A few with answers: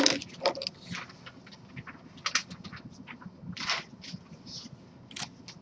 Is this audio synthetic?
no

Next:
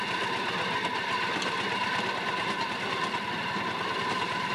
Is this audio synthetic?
no